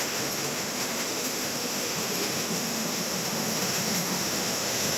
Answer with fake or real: fake